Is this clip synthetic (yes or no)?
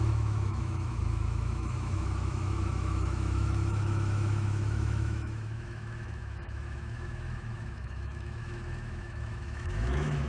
yes